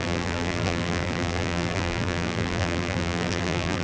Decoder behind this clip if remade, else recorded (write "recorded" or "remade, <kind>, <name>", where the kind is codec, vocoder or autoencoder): remade, vocoder, BigVGAN v2